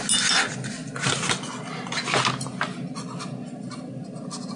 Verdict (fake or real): real